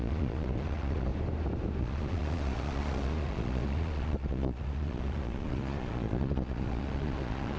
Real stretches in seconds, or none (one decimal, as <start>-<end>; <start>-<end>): 1.1-1.8